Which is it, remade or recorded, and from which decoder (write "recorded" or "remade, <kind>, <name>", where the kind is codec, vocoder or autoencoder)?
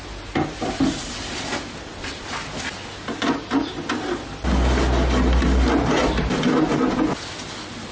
recorded